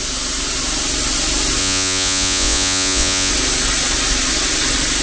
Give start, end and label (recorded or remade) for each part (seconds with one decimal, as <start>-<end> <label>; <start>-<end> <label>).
0.0-1.6 recorded; 1.6-3.3 remade; 3.3-5.0 recorded